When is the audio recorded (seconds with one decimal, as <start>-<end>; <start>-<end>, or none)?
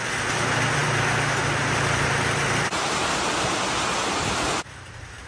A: 0.0-5.3